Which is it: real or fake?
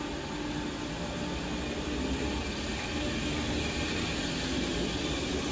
real